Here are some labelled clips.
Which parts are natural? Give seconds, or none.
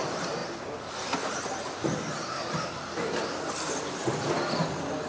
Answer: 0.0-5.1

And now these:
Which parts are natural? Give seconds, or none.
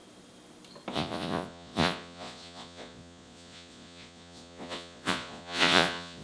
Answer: 0.0-0.9